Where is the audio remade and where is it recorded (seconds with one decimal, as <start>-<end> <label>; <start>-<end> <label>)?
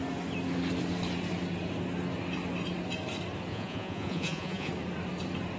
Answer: 0.0-3.5 recorded; 3.5-4.7 remade; 4.7-5.6 recorded